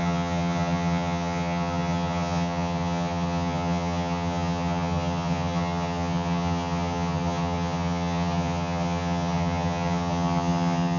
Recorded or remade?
remade